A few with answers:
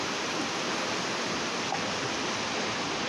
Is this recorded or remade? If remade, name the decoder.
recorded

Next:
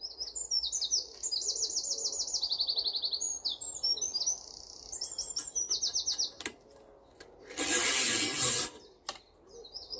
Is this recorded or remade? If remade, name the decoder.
recorded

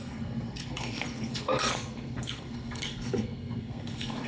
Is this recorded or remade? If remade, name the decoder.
remade, codec, SNAC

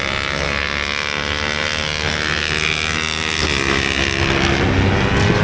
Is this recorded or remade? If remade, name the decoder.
recorded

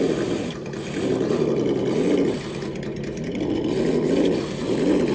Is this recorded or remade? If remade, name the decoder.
recorded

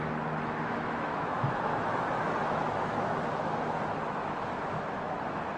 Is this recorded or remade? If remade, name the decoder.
remade, autoencoder, DAC-VAE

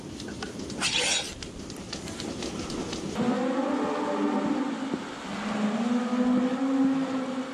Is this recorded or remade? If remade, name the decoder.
recorded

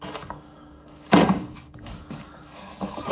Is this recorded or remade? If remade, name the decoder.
remade, codec, DAC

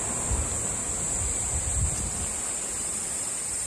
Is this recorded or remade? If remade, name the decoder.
recorded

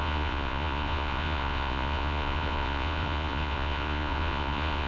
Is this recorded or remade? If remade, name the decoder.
remade, vocoder, Vocos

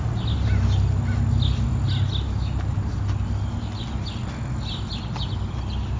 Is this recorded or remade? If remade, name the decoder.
recorded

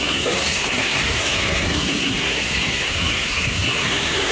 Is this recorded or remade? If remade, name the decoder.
remade, codec, SNAC